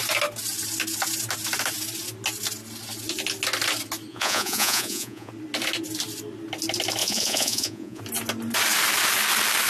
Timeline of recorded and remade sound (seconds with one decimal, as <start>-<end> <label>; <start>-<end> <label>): 0.0-4.1 recorded; 4.1-5.3 remade; 5.3-7.0 recorded; 7.0-8.0 remade; 8.0-9.7 recorded

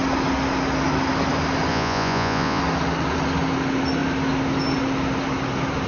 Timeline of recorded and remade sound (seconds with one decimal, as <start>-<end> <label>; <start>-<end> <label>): 0.0-1.7 recorded; 1.7-2.6 remade; 2.6-5.9 recorded

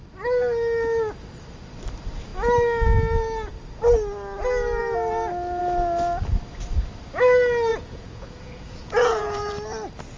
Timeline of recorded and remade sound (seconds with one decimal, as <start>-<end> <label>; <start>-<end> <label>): 0.0-7.7 recorded; 7.7-9.5 remade; 9.5-10.2 recorded